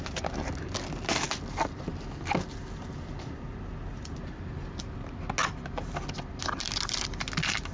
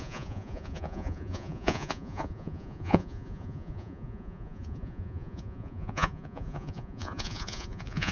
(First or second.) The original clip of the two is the first